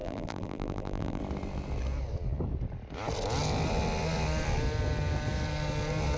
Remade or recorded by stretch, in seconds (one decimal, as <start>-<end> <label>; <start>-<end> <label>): 0.0-1.2 remade; 1.2-6.2 recorded